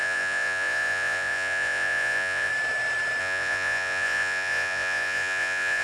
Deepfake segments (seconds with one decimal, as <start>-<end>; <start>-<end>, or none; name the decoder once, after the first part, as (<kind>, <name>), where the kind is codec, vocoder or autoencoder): 0.0-2.5 (vocoder, Vocos); 3.2-5.8